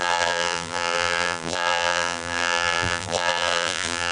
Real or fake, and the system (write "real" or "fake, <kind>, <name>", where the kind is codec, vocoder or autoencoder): fake, vocoder, BigVGAN v2